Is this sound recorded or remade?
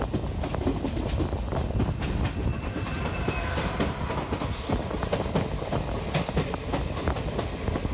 recorded